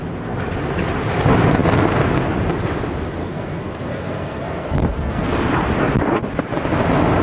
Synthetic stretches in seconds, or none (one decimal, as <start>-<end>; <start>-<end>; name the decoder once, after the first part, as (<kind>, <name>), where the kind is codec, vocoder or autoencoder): 3.2-5.3 (codec, SNAC)